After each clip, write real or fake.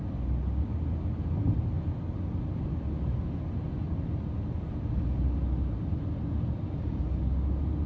real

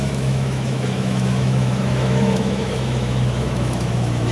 fake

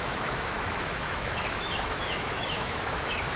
fake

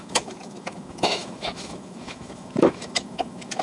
fake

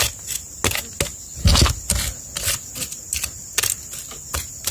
real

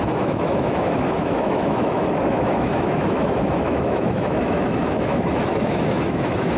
fake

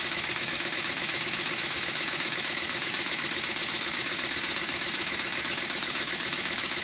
fake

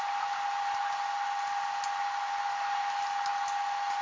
real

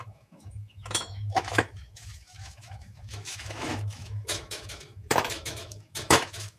fake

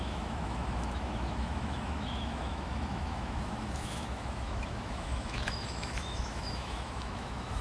fake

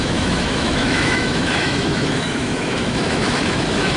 fake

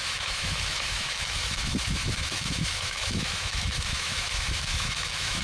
fake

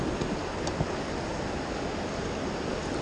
real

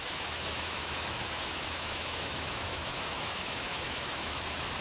fake